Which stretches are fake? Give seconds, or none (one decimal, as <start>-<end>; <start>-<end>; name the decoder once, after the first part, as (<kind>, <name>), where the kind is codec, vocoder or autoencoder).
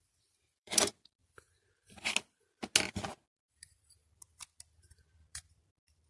0.0-1.2 (vocoder, BigVGAN v2); 3.1-4.0; 4.8-6.1